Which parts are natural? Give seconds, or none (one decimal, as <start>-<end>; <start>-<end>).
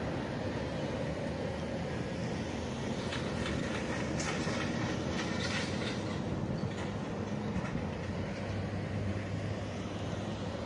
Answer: 0.0-9.1; 9.9-10.7